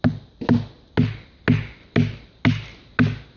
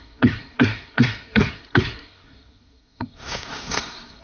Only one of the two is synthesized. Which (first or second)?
second